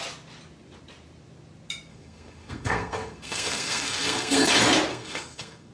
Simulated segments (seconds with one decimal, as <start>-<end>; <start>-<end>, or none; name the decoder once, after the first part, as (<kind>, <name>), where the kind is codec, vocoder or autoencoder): 1.9-4.5 (codec, SNAC); 4.9-5.7